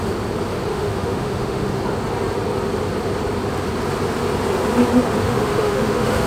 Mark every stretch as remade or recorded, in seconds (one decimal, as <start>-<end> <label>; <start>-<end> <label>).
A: 0.0-0.7 recorded; 0.7-1.8 remade; 1.8-5.2 recorded; 5.2-6.3 remade